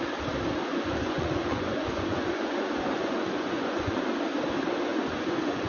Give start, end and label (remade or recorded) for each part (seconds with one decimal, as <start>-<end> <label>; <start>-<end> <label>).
0.0-0.7 recorded; 0.7-4.1 remade; 4.1-4.9 recorded; 4.9-5.7 remade